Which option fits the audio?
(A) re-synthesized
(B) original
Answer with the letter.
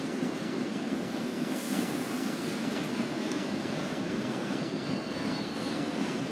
A